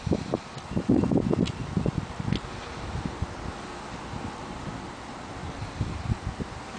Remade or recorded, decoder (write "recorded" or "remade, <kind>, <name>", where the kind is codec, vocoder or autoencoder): recorded